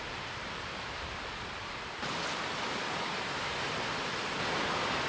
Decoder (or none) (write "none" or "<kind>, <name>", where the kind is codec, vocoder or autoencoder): vocoder, BigVGAN v2